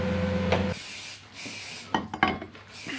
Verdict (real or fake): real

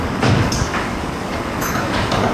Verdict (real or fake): fake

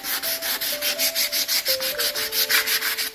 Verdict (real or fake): real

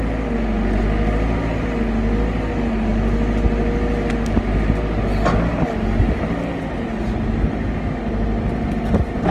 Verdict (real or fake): real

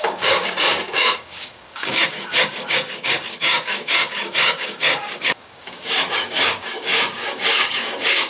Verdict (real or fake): fake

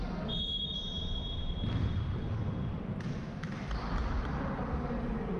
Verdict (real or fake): real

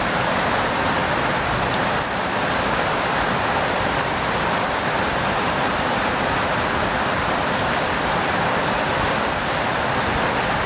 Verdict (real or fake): real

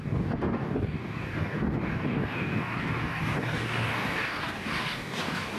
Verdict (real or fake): fake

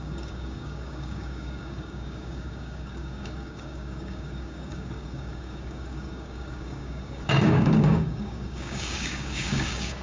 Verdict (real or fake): fake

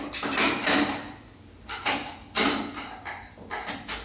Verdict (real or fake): real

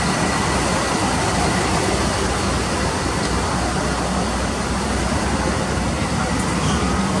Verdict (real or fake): real